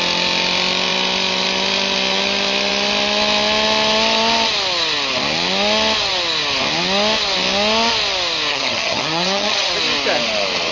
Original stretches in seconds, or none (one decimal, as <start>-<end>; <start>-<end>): 0.0-8.5; 9.7-10.7